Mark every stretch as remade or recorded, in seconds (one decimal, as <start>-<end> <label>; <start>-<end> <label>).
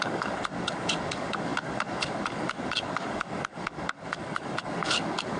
0.0-5.4 remade